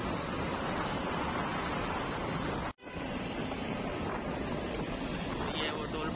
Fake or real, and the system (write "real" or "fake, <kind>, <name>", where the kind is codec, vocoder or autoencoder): real